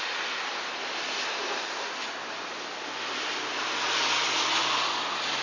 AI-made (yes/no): no